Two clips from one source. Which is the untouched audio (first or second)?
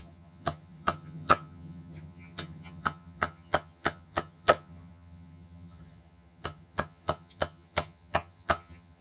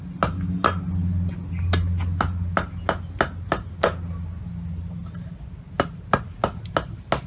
second